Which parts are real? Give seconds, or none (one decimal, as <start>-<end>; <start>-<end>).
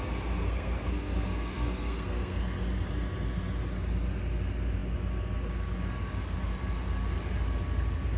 0.0-0.4; 2.4-8.2